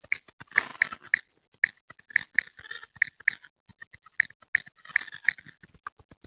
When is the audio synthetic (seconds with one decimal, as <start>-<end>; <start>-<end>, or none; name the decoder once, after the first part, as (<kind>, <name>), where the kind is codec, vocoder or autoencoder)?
none

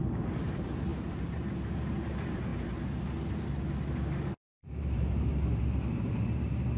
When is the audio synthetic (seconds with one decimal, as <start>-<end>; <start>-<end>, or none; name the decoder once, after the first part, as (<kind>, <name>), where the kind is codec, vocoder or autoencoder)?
0.0-2.5 (vocoder, BigVGAN v2); 4.5-6.8

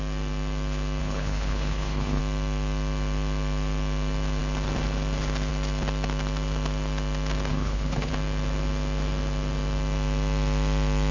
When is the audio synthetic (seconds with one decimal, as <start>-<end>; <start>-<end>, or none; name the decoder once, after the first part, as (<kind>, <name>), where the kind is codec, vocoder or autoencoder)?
1.0-2.2 (codec, HILCodec); 7.5-8.1

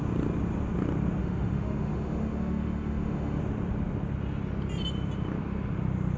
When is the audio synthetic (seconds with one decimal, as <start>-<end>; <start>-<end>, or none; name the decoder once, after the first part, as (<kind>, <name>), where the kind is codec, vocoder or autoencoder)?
1.2-3.4 (autoencoder, DAC-VAE)

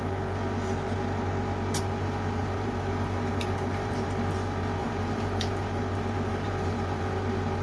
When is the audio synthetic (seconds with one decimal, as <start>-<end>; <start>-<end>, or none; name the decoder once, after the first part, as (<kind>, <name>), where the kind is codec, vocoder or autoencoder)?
2.4-4.3 (vocoder, BigVGAN v2); 4.8-5.8; 6.3-7.0